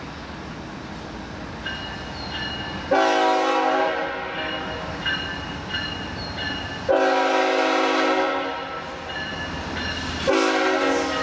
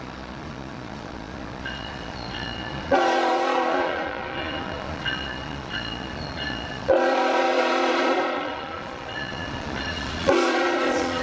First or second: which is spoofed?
second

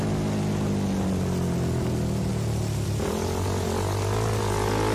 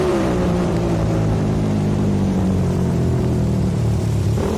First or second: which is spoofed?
second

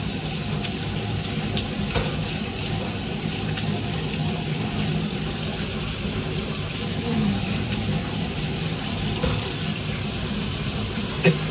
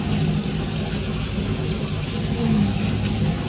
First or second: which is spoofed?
first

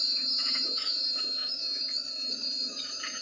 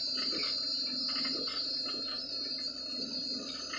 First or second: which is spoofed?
first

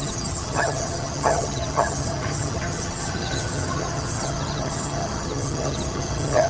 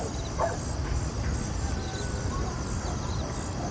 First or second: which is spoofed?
first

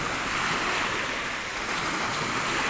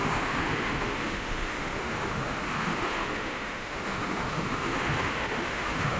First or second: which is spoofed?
second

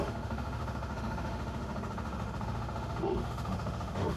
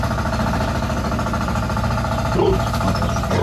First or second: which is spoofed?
first